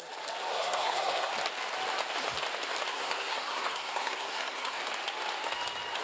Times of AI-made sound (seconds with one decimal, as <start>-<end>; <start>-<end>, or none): 0.5-1.3; 2.9-4.8